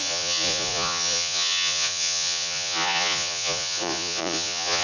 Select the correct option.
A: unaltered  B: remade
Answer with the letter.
B